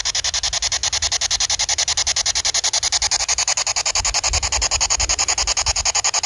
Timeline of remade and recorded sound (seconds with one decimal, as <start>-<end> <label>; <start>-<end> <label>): 0.0-6.3 recorded